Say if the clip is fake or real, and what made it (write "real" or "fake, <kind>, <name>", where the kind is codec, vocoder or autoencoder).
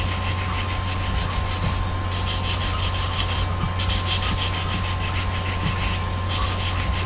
real